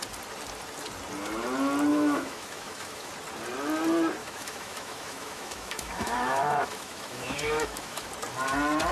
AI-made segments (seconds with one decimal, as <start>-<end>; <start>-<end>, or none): 1.9-3.1; 4.2-8.1